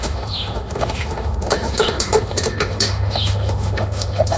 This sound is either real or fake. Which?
fake